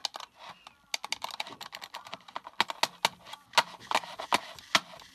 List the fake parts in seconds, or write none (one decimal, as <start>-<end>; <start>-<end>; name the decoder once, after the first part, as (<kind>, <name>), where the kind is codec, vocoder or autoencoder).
none